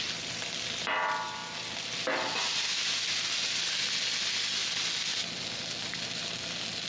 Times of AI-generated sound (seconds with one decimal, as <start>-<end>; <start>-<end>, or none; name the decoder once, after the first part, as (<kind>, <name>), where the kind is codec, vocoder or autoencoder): none